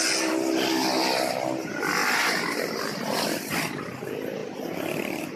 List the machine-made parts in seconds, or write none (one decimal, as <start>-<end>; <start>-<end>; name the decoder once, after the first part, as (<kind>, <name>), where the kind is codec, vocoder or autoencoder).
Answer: 2.0-3.7 (vocoder, BigVGAN v2); 4.4-5.4

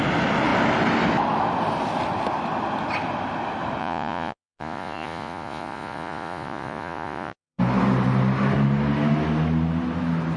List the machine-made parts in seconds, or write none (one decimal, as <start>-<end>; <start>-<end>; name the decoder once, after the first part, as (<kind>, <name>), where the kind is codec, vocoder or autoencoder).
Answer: 3.8-7.6 (vocoder, Vocos)

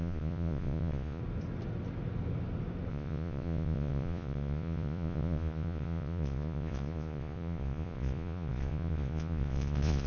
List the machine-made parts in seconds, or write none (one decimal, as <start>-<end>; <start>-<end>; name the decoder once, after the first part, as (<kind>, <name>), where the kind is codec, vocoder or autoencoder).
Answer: 0.0-1.2 (vocoder, Vocos); 2.9-10.1

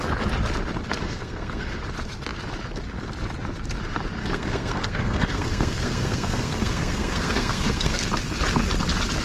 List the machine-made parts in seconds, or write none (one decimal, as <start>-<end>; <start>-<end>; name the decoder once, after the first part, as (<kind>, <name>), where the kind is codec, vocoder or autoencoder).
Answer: 1.0-1.8 (codec, SNAC); 4.2-8.1

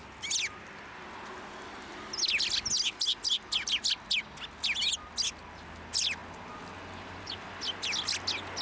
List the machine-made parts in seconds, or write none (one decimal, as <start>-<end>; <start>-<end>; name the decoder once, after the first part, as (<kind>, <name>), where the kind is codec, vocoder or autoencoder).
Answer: none